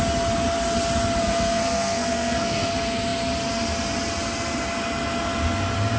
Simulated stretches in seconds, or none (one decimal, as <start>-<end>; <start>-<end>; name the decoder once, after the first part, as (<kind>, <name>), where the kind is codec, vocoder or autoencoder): 1.2-2.7 (codec, SNAC)

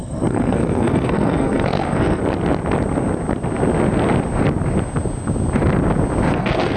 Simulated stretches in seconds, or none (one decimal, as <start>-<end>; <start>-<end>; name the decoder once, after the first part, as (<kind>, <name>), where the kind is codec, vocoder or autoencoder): 0.0-2.2 (codec, SNAC); 6.3-6.8